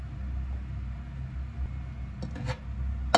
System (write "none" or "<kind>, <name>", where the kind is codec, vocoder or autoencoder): none